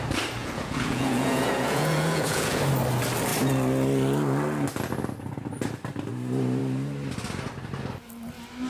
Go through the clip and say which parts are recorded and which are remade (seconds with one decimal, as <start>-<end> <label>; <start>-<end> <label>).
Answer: 0.0-0.4 recorded; 0.4-2.6 remade; 2.6-8.7 recorded